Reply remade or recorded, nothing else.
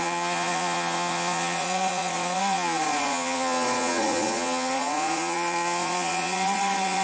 remade